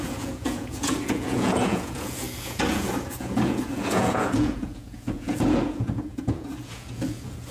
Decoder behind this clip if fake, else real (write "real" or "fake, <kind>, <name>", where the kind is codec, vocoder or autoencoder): fake, vocoder, Vocos